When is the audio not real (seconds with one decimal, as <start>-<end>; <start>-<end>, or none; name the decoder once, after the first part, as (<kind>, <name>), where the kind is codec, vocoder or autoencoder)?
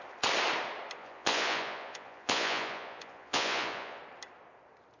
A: 1.0-4.0 (vocoder, Vocos)